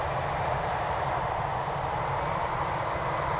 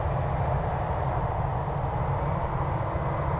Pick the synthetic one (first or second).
first